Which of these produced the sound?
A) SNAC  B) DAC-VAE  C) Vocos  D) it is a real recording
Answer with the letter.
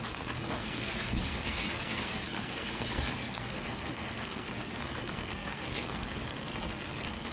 A